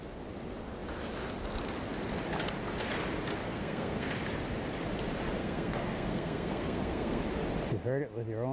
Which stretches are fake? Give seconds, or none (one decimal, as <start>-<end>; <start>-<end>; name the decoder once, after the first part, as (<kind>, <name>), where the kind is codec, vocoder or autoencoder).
3.4-4.1 (codec, SNAC); 5.4-7.2

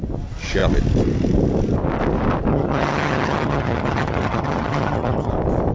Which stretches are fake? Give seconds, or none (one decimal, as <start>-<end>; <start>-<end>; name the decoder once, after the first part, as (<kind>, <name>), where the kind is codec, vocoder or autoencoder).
2.5-5.3 (vocoder, HiFi-GAN)